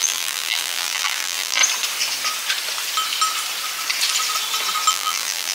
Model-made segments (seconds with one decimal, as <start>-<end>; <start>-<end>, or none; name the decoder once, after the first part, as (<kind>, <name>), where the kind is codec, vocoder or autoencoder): 0.0-1.6 (vocoder, BigVGAN v2); 4.9-5.5